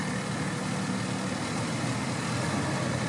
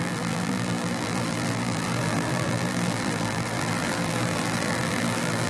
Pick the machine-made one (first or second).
second